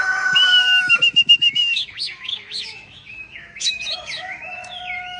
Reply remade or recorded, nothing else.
remade